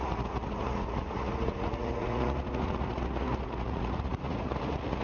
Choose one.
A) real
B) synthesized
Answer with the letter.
B